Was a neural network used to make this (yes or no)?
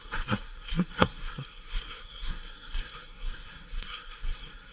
yes